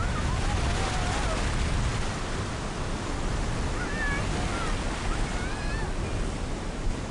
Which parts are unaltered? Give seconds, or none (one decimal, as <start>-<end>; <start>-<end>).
0.0-7.1